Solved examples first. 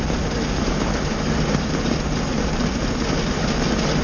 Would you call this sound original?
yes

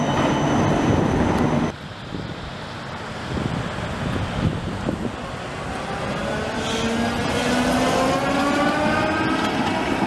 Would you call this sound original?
yes